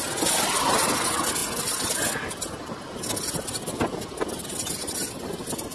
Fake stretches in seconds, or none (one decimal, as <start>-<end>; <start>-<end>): none